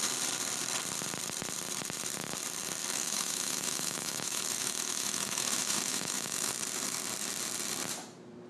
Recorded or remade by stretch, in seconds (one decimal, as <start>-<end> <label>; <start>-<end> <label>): 0.0-2.9 recorded; 2.9-6.5 remade; 6.5-8.5 recorded